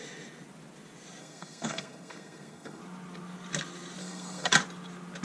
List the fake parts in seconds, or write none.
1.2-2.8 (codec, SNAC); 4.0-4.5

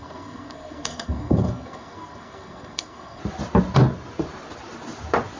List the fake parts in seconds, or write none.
0.0-3.2 (codec, SNAC)

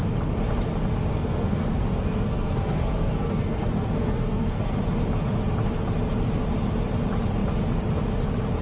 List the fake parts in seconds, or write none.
1.1-4.8 (codec, SNAC)